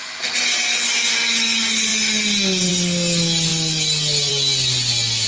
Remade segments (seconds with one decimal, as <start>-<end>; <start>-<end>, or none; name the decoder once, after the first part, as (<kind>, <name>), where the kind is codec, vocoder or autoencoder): none